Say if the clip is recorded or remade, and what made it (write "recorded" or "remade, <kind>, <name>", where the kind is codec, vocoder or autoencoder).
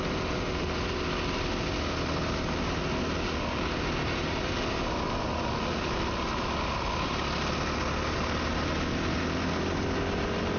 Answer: recorded